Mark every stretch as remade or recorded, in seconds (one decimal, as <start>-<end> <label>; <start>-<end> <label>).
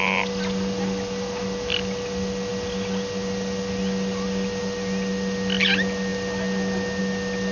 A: 0.0-7.5 recorded